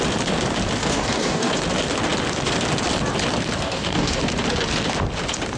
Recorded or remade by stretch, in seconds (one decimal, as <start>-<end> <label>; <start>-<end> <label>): 0.0-0.8 recorded; 0.8-1.5 remade; 1.5-3.6 recorded; 3.6-4.2 remade; 4.2-5.6 recorded